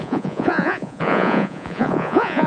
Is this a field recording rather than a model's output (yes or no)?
no